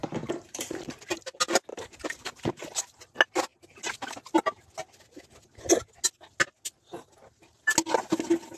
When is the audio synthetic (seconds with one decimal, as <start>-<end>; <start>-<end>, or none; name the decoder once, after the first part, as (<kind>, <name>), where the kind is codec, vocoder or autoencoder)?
0.0-1.0 (vocoder, BigVGAN v2); 1.7-2.3